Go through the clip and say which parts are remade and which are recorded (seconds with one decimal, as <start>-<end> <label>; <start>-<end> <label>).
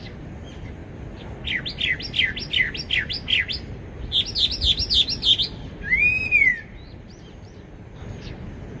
0.0-6.5 recorded; 6.5-8.0 remade; 8.0-8.8 recorded